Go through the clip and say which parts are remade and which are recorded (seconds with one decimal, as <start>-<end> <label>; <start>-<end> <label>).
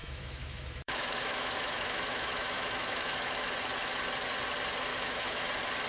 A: 0.0-3.5 remade; 3.5-4.9 recorded; 4.9-5.5 remade; 5.5-5.9 recorded